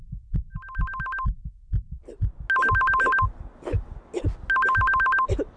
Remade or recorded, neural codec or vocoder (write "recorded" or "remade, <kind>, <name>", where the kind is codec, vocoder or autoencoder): recorded